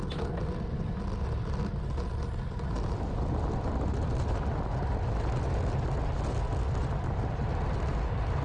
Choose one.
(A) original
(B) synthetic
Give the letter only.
A